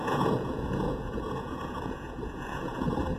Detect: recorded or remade remade